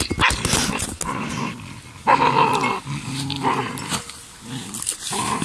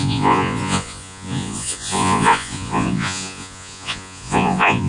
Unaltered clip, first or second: first